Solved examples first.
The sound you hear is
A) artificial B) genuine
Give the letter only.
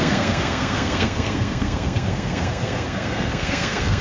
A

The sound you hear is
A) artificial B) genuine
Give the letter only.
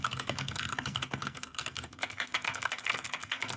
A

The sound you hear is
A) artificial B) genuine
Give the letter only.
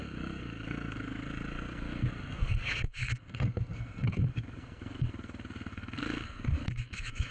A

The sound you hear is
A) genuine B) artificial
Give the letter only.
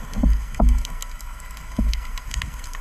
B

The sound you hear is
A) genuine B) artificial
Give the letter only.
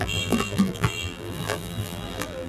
B